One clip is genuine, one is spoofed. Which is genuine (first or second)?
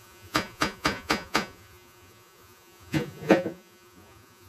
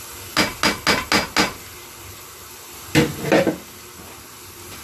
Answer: second